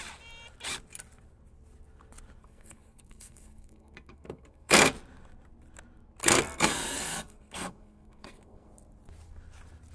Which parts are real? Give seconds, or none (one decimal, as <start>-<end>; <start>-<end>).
0.0-2.4; 4.9-6.2; 8.7-9.9